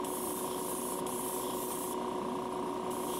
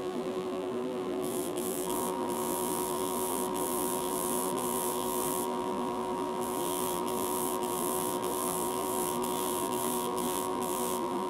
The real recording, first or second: first